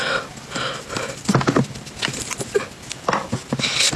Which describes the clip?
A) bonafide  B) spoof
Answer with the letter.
A